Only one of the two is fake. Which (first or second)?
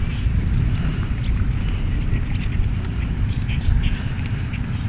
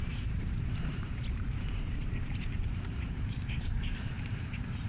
second